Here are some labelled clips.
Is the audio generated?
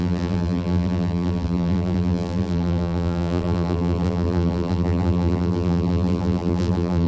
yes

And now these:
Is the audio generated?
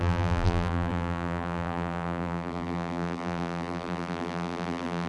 yes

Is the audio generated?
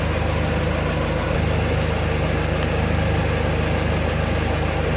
no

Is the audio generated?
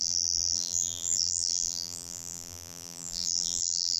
yes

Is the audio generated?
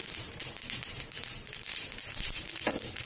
yes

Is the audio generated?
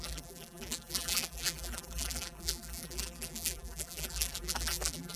yes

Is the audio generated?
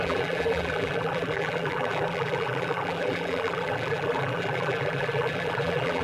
yes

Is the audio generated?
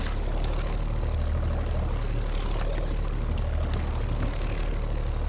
no